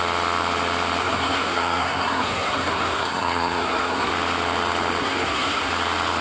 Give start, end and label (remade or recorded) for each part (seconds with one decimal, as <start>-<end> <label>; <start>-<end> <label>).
0.0-1.0 recorded; 1.0-4.1 remade; 4.1-5.0 recorded; 5.0-5.7 remade; 5.7-6.2 recorded